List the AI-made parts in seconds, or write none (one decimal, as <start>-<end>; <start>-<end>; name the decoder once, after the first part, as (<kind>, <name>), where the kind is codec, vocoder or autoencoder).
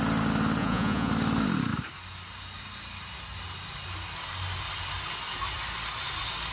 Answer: 0.6-1.1 (vocoder, Vocos)